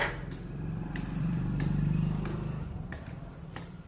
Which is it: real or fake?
fake